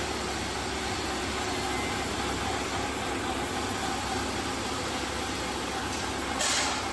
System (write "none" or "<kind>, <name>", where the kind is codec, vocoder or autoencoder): none